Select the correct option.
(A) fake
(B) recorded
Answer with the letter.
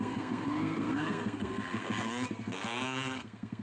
A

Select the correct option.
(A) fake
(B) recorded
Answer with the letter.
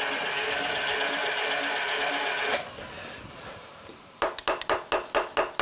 B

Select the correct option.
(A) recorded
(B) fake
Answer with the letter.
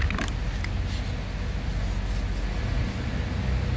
A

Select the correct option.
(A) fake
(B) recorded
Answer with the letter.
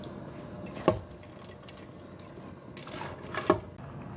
B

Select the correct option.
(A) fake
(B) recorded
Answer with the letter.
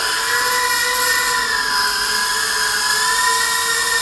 B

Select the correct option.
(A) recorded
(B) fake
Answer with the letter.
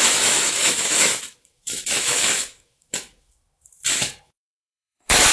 B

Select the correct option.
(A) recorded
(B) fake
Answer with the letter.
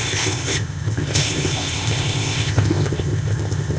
B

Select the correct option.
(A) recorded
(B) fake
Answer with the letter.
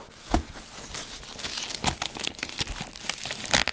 A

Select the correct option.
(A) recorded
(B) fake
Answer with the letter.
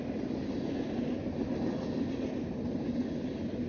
A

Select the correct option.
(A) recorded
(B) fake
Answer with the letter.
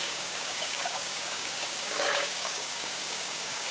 B